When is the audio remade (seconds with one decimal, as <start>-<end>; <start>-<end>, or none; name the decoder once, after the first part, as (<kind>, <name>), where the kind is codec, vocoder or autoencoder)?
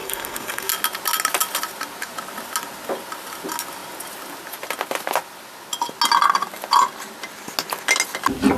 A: 0.0-0.7 (codec, SNAC)